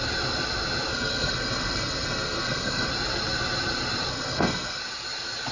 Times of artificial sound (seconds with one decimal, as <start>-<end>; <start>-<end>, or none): 0.9-2.9; 4.1-4.8